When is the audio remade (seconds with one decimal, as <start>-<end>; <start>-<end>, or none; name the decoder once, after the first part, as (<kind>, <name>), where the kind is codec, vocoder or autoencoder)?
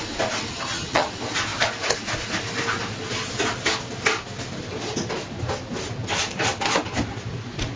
0.5-1.1 (vocoder, HiFi-GAN)